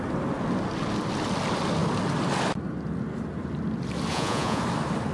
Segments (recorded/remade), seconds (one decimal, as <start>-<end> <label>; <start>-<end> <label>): 0.0-4.1 recorded; 4.1-4.6 remade; 4.6-5.1 recorded